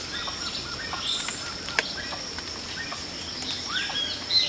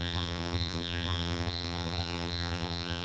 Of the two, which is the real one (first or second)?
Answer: first